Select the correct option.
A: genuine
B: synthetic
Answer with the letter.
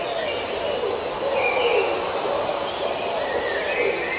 A